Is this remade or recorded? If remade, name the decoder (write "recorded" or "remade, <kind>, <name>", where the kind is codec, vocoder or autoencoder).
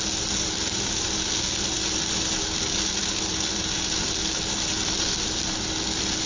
recorded